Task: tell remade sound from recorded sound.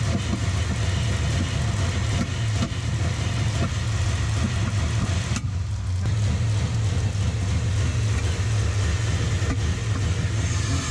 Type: recorded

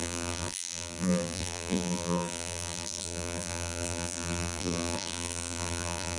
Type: remade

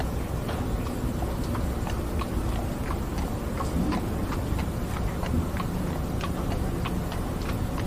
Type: recorded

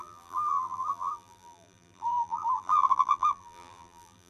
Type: remade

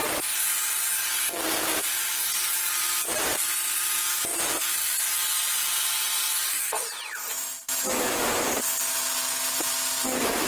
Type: recorded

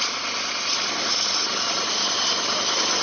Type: recorded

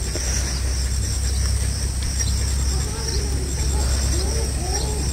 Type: recorded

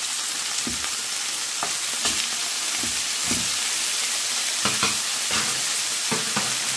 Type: recorded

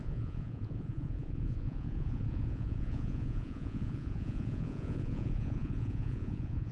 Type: remade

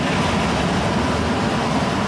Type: recorded